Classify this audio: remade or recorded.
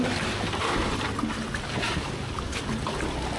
recorded